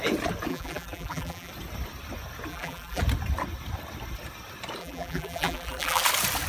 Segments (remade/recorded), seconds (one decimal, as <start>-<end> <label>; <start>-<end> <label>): 0.0-0.5 recorded; 0.5-1.5 remade; 1.5-2.5 recorded; 2.5-3.0 remade; 3.0-4.8 recorded; 4.8-6.0 remade; 6.0-6.5 recorded